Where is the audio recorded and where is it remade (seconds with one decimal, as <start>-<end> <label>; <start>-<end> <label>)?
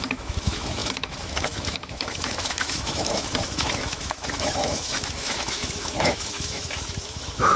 0.0-7.6 remade